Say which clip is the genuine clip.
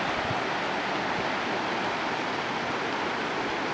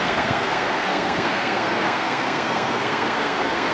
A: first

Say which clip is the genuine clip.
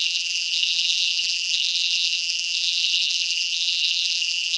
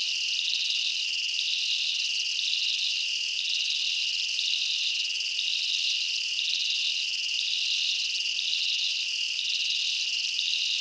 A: second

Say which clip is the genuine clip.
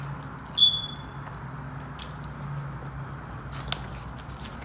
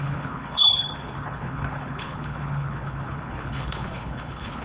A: first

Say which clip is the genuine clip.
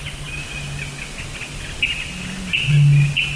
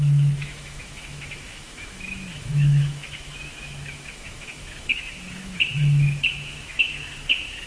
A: first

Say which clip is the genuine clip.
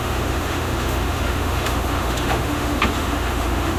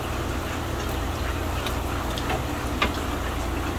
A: second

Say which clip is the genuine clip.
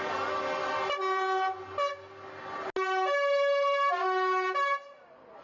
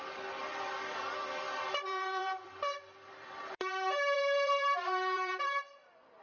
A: first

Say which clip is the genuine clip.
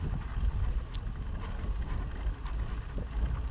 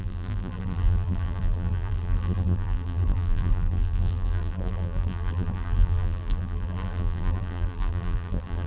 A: first